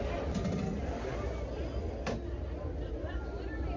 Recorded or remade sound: recorded